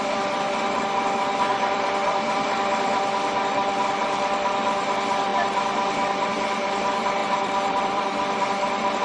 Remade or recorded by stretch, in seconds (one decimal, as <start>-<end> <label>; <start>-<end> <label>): 0.0-1.5 recorded; 1.5-3.0 remade; 3.0-7.2 recorded; 7.2-9.0 remade